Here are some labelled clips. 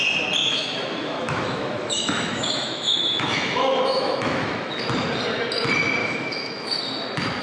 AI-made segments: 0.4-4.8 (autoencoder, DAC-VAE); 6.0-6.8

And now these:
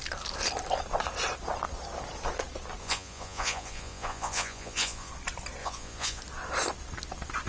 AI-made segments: 2.8-5.1 (vocoder, Vocos); 5.6-6.2

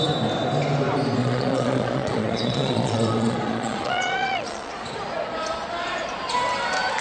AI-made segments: 1.2-4.7 (vocoder, Vocos)

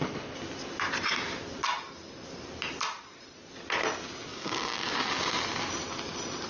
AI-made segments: 4.3-5.4 (codec, DAC)

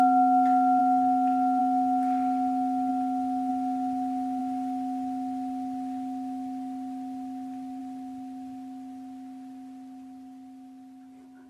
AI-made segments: none